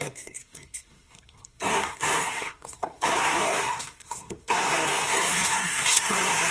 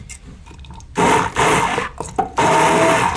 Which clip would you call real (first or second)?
second